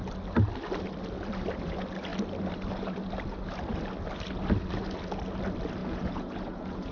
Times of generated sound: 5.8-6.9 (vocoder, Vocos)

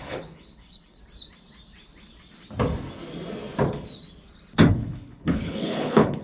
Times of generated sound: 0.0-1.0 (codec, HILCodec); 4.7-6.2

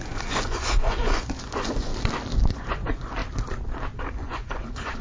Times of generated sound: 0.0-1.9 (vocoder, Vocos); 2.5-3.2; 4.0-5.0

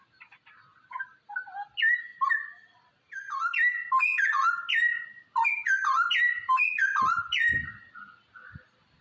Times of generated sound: none

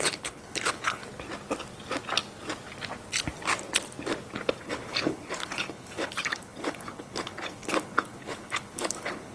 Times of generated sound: 0.0-1.0 (codec, HILCodec); 4.6-9.3

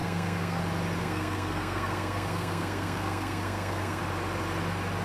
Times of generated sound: 0.0-0.6 (codec, SNAC); 1.0-4.0